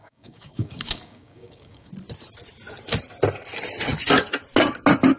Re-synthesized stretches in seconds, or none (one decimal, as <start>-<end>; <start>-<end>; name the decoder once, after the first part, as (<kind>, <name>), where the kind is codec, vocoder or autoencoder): 0.0-1.9 (codec, DAC)